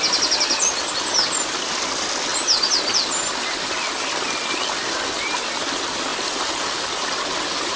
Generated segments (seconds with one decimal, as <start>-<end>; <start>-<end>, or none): none